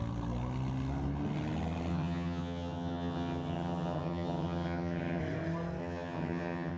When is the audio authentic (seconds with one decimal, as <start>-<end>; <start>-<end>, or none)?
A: 0.0-1.9; 5.2-5.8